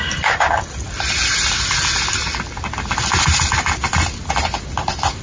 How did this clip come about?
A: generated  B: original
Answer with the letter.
B